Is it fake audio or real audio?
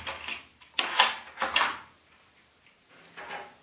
real